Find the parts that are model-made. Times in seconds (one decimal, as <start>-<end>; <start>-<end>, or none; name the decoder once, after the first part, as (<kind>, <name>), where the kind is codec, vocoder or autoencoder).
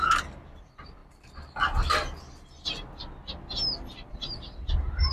0.6-1.0 (vocoder, BigVGAN v2); 4.1-5.1